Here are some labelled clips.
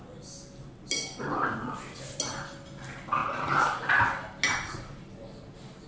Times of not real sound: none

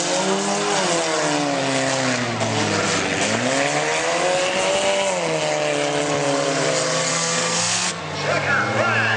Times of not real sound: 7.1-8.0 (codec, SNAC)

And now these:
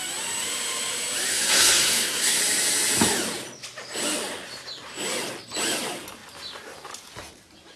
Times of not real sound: 1.3-2.4 (codec, SNAC)

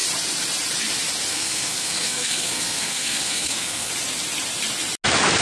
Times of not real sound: 1.3-3.9 (codec, SNAC)

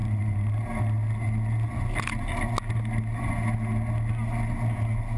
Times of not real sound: 0.0-0.8 (vocoder, BigVGAN v2)

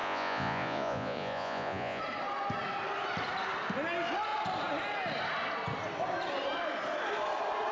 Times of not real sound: 0.0-2.0 (vocoder, Vocos)